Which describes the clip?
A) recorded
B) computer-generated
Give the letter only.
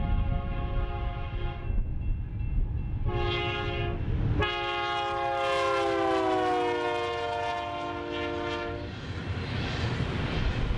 A